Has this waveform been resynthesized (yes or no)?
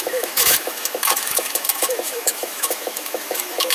yes